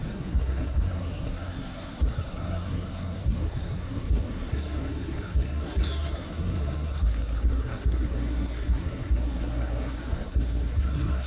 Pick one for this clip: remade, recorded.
remade